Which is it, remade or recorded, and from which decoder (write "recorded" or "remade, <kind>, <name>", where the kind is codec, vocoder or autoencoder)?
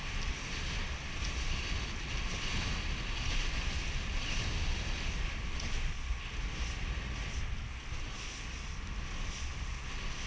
recorded